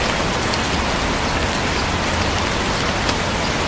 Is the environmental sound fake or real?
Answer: real